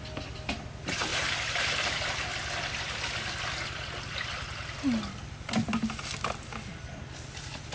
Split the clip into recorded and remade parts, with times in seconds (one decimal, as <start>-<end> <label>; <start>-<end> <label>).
0.0-1.1 recorded; 1.1-1.9 remade; 1.9-7.7 recorded